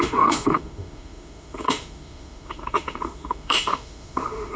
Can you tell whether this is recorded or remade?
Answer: remade